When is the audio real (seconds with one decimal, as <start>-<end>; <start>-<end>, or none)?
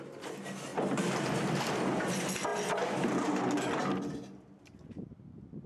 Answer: 0.0-2.5; 3.4-5.7